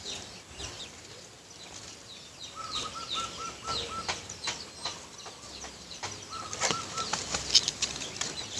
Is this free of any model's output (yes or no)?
yes